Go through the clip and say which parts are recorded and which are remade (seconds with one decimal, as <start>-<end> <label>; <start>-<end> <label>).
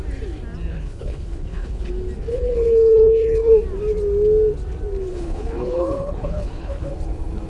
0.0-0.7 recorded; 0.7-1.9 remade; 1.9-2.3 recorded; 2.3-3.5 remade; 3.5-5.1 recorded; 5.1-6.9 remade; 6.9-7.5 recorded